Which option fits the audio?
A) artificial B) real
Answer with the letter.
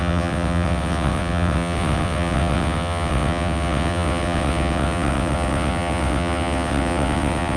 A